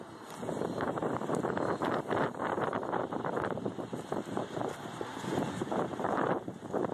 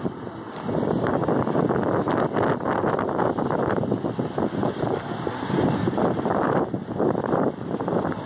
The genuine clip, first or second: second